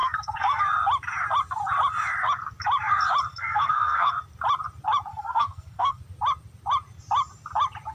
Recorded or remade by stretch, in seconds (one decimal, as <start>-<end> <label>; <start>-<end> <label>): 0.0-0.6 remade; 0.6-3.3 recorded; 3.3-4.1 remade; 4.1-5.1 recorded; 5.1-6.0 remade; 6.0-7.9 recorded